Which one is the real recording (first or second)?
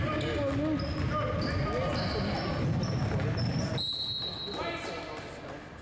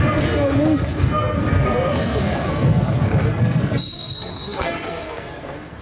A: first